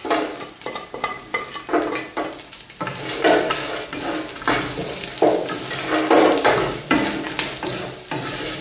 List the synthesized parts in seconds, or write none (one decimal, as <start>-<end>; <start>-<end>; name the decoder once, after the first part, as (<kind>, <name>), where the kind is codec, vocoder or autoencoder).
none